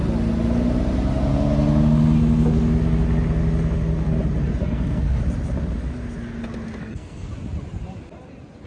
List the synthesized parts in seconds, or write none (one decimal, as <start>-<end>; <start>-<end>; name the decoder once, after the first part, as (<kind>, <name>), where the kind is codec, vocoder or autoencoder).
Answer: 4.6-5.2 (codec, SNAC); 6.8-7.3